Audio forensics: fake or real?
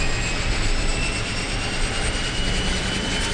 real